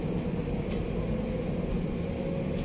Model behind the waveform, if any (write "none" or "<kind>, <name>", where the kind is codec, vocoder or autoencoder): none